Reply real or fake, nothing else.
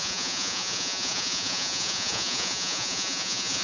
fake